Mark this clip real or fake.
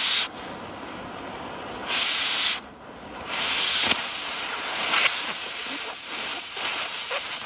real